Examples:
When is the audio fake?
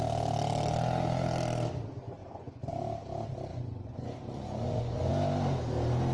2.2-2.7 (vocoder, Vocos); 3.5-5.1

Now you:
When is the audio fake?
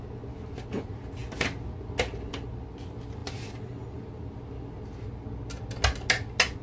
none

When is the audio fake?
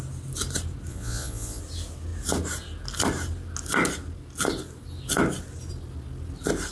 0.9-1.6 (vocoder, Vocos)